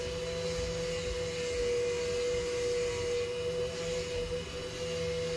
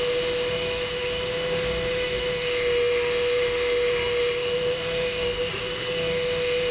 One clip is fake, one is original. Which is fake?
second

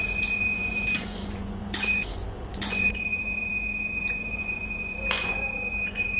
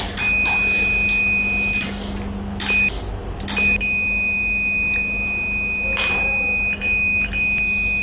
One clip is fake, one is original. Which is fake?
first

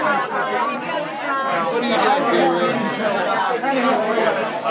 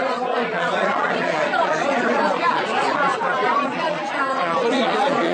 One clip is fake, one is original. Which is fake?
second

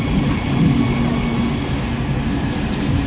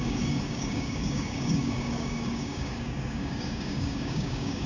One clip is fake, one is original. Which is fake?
second